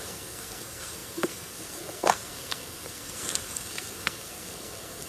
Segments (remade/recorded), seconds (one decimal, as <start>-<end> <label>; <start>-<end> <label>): 0.0-5.1 remade